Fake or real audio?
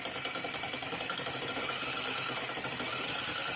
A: real